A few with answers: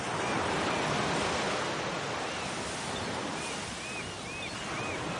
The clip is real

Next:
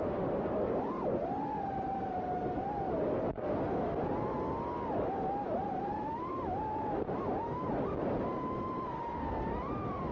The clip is real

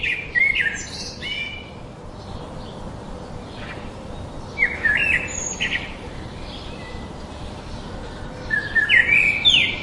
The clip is fake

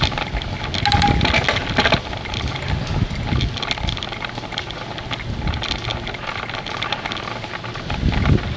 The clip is real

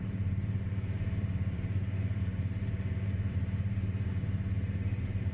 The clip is fake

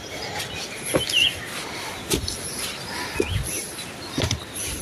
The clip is real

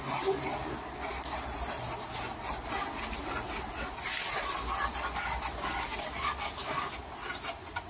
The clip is fake